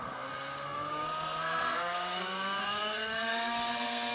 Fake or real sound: fake